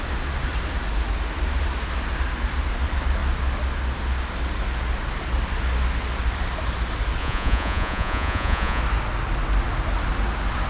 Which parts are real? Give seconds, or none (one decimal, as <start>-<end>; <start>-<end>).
0.0-7.2; 8.8-10.7